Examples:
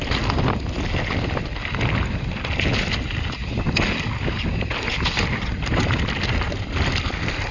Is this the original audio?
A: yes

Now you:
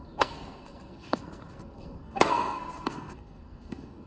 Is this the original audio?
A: no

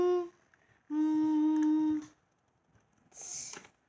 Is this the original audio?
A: yes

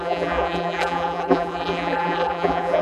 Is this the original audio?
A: no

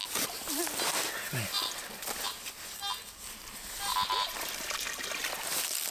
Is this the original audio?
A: yes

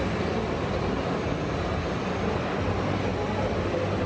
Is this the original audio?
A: yes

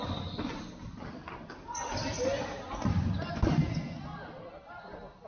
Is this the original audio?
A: yes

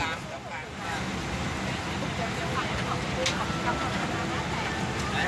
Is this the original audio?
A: yes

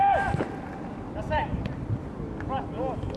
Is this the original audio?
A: no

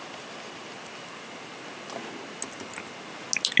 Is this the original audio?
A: yes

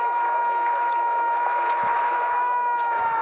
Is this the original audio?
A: no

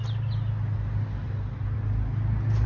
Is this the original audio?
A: yes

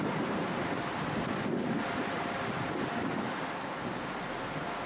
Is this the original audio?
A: yes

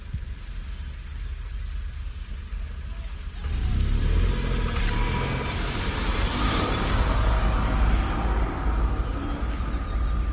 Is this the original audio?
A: yes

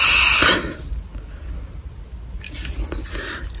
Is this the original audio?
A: yes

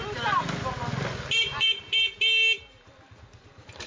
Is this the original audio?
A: yes